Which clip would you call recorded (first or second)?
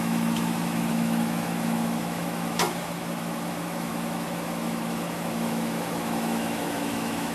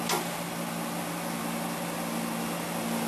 second